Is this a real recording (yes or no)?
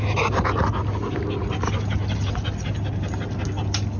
yes